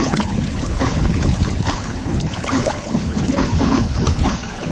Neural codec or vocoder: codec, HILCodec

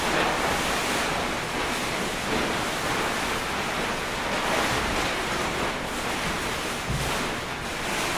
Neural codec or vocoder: none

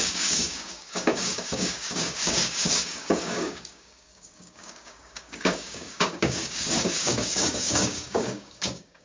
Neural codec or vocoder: codec, DAC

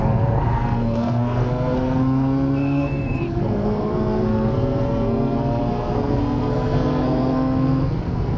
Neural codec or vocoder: codec, SNAC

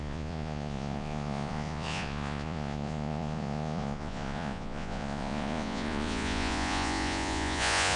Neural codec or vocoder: vocoder, Vocos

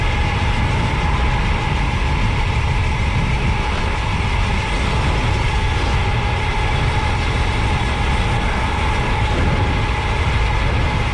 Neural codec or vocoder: none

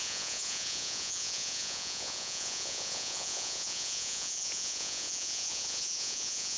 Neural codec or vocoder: vocoder, Vocos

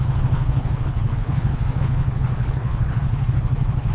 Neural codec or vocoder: codec, HILCodec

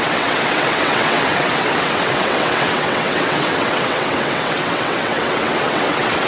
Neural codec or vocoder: vocoder, WaveNeXt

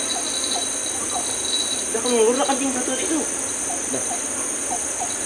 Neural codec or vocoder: none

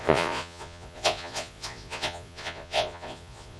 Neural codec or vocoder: vocoder, Vocos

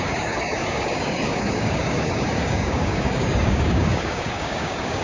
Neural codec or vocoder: codec, DAC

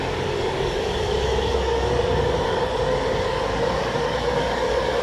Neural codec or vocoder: codec, DAC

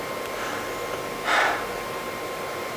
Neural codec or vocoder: none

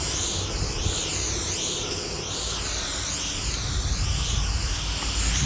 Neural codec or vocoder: none